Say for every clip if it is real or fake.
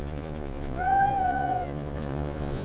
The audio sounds fake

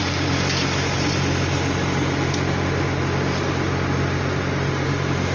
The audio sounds real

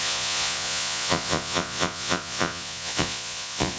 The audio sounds fake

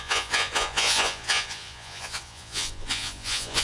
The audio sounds fake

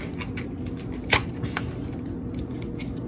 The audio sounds real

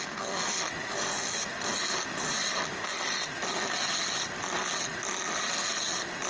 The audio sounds real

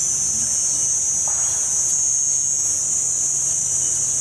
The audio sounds real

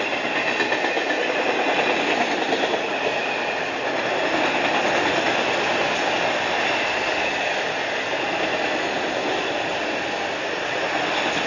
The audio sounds real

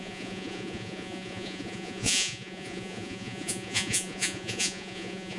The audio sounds fake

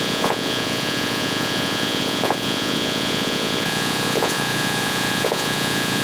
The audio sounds fake